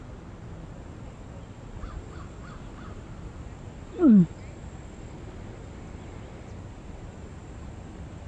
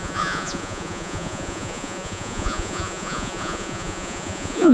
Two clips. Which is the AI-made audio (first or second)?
second